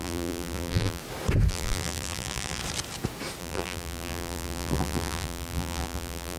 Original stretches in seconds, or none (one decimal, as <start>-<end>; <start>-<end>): 1.0-1.5; 2.6-3.4